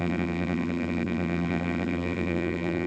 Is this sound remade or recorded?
remade